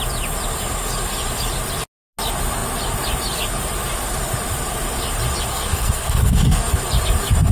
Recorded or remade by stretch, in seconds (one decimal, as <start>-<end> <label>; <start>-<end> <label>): 0.0-5.5 recorded; 5.5-6.7 remade; 6.7-7.5 recorded